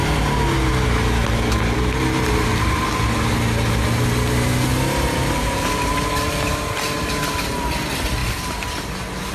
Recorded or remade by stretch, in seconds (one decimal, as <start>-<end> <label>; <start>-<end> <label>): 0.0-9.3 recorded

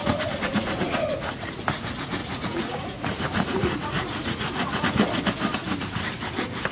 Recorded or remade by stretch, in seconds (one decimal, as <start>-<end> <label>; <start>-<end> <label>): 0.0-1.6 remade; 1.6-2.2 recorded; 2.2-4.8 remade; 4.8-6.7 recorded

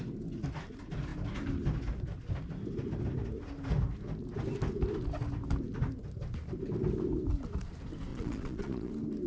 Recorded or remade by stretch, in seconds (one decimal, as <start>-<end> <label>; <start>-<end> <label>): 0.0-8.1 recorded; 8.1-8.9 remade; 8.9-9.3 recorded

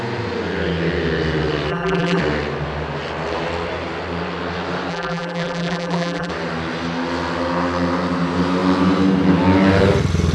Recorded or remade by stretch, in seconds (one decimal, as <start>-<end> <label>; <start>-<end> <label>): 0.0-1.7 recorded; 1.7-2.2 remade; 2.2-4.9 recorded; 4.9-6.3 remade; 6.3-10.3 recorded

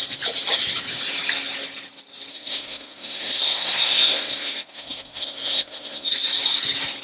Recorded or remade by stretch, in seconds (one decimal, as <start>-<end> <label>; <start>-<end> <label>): 0.0-2.3 recorded; 2.3-6.1 remade; 6.1-7.0 recorded

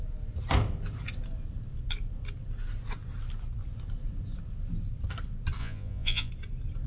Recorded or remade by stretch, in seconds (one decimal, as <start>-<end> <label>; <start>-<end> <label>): 0.0-5.6 recorded; 5.6-6.3 remade; 6.3-6.9 recorded

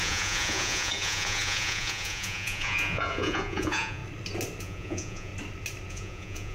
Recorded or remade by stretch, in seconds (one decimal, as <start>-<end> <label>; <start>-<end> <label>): 0.0-4.0 remade; 4.0-4.6 recorded; 4.6-5.3 remade; 5.3-5.9 recorded; 5.9-6.5 remade

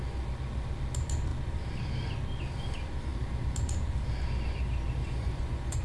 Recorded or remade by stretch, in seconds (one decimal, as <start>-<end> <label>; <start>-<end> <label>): 0.0-5.0 recorded; 5.0-5.8 remade